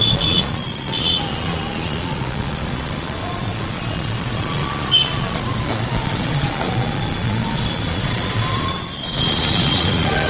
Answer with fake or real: fake